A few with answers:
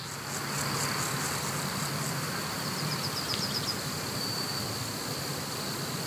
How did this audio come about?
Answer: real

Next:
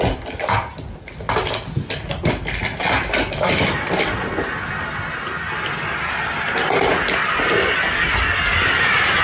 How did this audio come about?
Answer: real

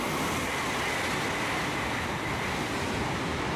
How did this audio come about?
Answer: real